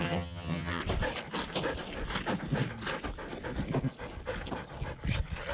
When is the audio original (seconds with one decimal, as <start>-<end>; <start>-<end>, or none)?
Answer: 0.8-5.5

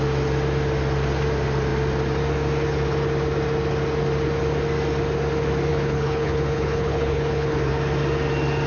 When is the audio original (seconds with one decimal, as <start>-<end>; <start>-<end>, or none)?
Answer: 0.0-5.7; 7.7-8.7